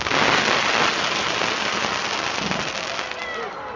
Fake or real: real